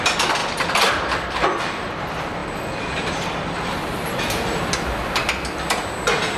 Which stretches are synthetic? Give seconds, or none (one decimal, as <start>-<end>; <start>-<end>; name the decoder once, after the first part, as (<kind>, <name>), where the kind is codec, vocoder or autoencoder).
none

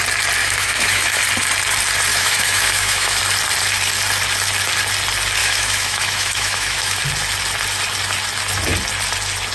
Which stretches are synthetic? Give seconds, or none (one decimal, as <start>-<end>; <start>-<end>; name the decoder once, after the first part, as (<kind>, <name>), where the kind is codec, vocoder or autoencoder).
0.4-1.2 (autoencoder, DAC-VAE); 2.1-3.2; 5.4-7.0

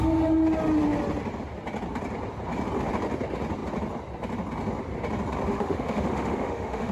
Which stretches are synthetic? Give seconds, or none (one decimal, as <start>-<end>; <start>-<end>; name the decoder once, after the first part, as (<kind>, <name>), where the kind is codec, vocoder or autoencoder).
5.5-6.9 (autoencoder, DAC-VAE)

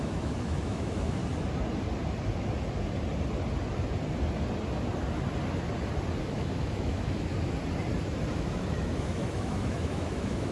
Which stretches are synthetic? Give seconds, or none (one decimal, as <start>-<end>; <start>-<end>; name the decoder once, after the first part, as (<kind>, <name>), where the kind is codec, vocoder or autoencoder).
0.0-1.2 (autoencoder, DAC-VAE); 6.2-7.3; 8.3-10.5

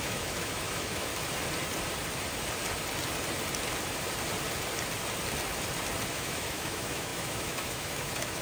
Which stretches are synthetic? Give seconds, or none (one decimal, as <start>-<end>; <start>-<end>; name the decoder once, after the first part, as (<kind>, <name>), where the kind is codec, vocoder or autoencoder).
0.0-1.1 (autoencoder, DAC-VAE); 6.1-8.4

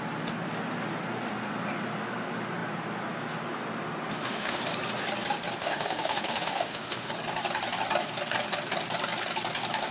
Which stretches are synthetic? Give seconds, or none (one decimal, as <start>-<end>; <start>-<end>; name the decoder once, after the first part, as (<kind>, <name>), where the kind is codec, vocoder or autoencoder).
4.1-4.6 (autoencoder, DAC-VAE); 5.6-7.1

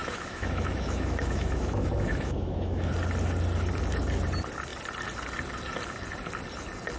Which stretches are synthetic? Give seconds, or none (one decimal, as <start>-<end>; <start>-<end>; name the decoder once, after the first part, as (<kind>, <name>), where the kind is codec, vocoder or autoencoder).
0.0-2.9 (autoencoder, DAC-VAE)